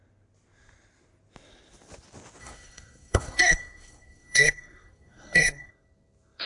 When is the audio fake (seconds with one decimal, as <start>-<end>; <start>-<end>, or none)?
2.4-5.7